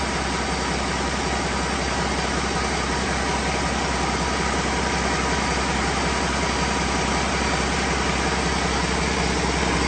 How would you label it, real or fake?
real